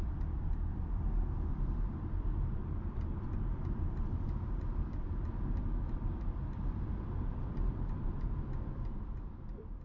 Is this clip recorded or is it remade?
remade